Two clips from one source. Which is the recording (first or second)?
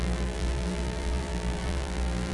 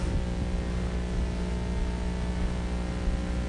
second